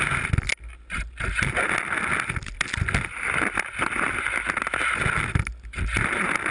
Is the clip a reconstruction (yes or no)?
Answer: no